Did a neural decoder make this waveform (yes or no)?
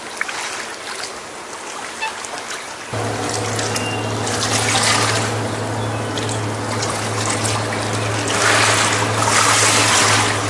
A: no